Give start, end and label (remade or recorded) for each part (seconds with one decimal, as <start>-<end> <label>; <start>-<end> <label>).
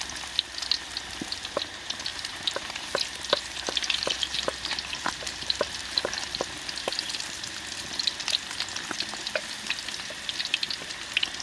0.0-2.1 recorded; 2.1-6.4 remade; 6.4-11.4 recorded